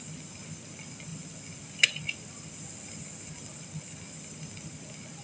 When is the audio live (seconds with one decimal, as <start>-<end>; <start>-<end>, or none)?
0.0-5.2